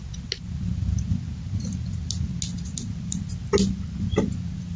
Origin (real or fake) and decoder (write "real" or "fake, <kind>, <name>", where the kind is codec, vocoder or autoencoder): real